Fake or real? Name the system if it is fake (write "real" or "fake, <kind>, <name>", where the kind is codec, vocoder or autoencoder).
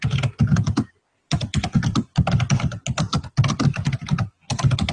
real